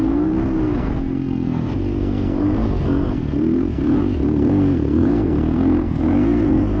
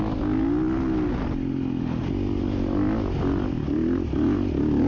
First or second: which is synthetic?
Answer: first